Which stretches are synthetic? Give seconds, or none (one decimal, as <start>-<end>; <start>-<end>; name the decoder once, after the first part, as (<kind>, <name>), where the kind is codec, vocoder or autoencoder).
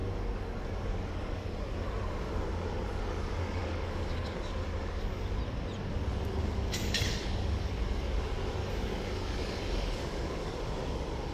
0.0-5.4 (codec, DAC); 5.9-11.3